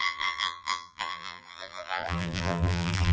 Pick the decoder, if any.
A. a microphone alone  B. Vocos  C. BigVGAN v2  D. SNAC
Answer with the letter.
C